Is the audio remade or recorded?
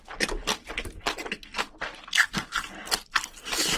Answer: recorded